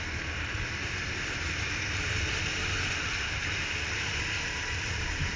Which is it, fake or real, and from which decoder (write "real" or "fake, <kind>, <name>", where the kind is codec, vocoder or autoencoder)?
real